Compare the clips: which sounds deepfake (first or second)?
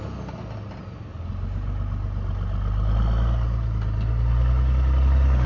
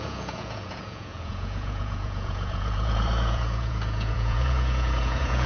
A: second